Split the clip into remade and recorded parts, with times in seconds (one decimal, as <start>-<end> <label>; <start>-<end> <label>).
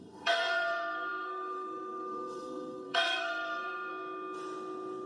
0.0-3.9 remade; 3.9-5.1 recorded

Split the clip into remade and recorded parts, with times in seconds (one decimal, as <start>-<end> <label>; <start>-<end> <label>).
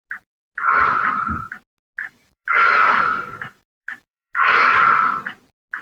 0.0-2.0 recorded; 2.0-4.8 remade; 4.8-5.8 recorded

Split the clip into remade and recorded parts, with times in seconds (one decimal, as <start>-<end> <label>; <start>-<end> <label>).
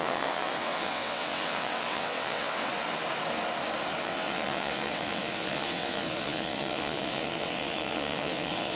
0.0-2.7 remade; 2.7-4.0 recorded; 4.0-8.8 remade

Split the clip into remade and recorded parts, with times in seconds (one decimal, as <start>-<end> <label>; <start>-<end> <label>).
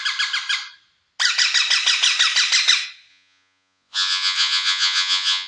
0.0-3.1 recorded; 3.1-5.5 remade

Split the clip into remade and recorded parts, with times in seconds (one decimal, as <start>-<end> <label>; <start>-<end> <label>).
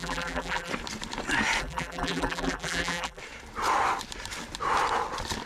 0.0-0.7 remade; 0.7-1.6 recorded; 1.6-3.2 remade; 3.2-5.5 recorded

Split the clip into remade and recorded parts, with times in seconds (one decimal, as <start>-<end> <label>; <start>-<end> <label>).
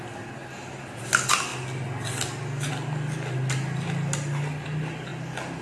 0.0-5.6 recorded